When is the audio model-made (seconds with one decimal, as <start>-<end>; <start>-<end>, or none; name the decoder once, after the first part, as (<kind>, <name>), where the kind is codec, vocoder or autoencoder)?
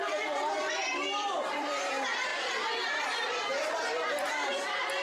0.0-5.0 (vocoder, BigVGAN v2)